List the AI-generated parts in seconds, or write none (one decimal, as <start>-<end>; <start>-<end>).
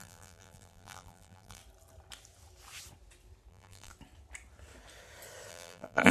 0.0-1.6; 3.5-3.9; 5.5-6.1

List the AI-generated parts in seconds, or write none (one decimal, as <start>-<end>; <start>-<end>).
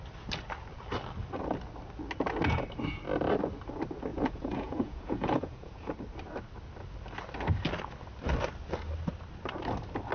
4.1-5.9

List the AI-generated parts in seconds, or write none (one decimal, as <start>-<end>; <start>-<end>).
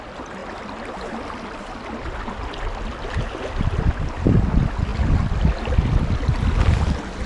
none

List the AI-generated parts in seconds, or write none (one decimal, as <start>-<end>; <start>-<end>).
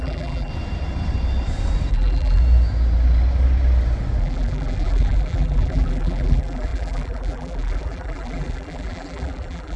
0.0-0.5; 1.9-2.4; 4.2-9.8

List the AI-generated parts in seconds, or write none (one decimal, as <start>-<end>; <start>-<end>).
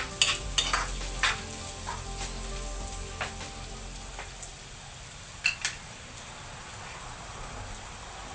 none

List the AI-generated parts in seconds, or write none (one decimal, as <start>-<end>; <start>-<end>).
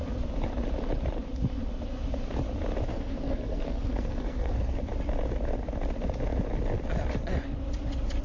2.9-4.8